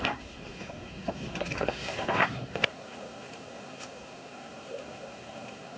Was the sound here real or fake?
fake